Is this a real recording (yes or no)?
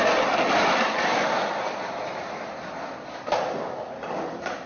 yes